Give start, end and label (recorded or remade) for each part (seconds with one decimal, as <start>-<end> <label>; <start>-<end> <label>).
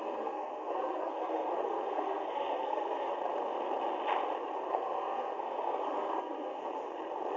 0.0-3.1 remade; 3.1-4.7 recorded; 4.7-6.6 remade; 6.6-7.4 recorded